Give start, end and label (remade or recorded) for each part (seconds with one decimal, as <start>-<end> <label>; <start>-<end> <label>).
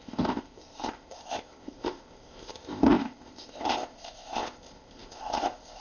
0.0-5.8 remade